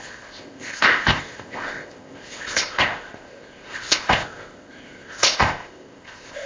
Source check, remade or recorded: remade